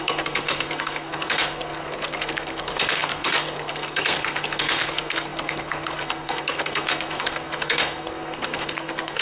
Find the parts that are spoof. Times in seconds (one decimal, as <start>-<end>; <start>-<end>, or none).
0.0-9.2